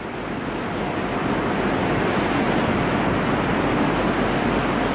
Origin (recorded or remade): recorded